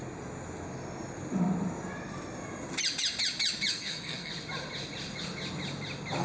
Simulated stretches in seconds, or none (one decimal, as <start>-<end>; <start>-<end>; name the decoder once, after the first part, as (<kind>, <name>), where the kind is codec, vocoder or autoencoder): 3.7-4.3 (codec, SNAC)